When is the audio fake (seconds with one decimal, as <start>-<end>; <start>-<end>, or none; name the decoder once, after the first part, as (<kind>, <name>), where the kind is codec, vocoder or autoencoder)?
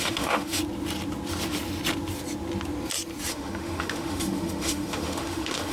0.0-0.6 (autoencoder, DAC-VAE); 3.3-5.7